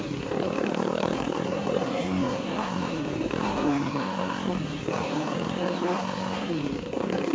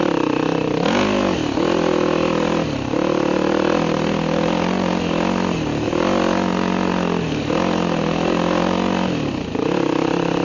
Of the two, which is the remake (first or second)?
first